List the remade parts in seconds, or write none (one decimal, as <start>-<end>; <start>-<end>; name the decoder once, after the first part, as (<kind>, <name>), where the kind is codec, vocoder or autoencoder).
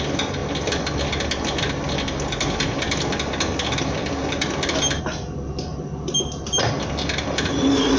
none